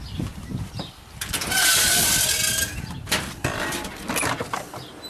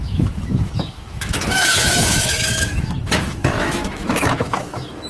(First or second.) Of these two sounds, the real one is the first